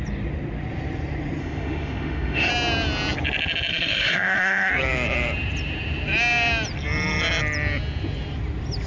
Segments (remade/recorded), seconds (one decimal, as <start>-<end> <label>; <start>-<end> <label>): 0.0-1.4 recorded; 1.4-2.5 remade; 2.5-3.7 recorded; 3.7-4.7 remade; 4.7-8.9 recorded